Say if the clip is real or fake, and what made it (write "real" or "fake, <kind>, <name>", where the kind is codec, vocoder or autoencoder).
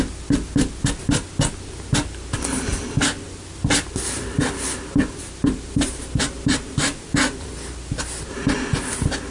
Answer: real